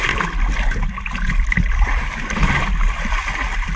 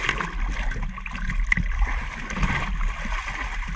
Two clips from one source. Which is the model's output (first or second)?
first